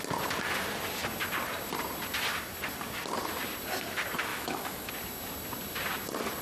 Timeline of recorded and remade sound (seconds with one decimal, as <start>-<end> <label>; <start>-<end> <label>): 0.0-4.3 recorded; 4.3-4.9 remade; 4.9-6.4 recorded